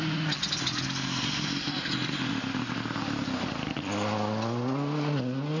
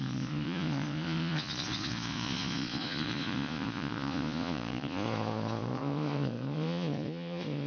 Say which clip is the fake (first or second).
second